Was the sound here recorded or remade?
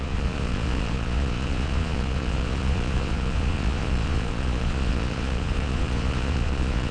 remade